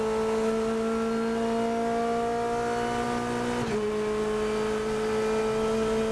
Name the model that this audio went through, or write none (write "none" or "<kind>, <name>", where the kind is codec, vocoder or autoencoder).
none